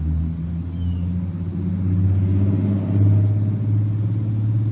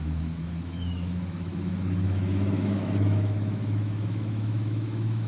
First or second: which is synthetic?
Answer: second